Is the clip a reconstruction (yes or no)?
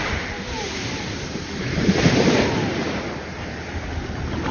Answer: yes